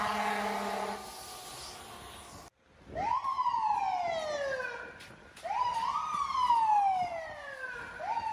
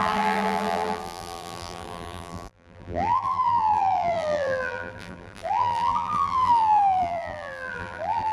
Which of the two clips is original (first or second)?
first